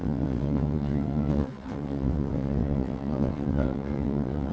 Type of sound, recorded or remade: remade